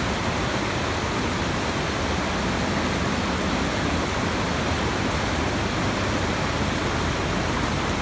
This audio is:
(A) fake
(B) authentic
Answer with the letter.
B